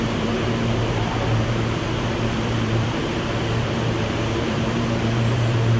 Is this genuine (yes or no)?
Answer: no